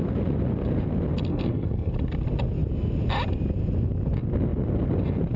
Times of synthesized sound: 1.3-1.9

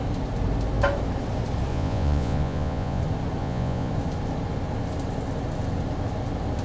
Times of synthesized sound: 1.7-3.0; 3.4-3.9

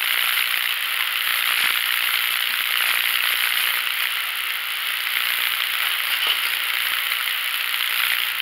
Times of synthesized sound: 0.0-8.4

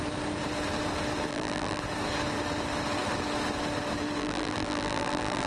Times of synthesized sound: 1.3-1.8; 4.2-5.5

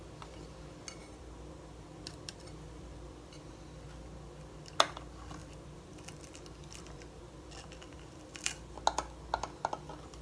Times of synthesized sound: 1.0-3.5; 5.4-8.2

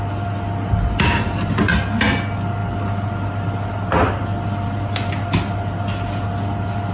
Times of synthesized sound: none

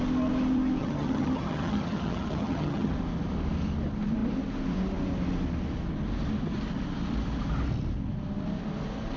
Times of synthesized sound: 0.8-2.9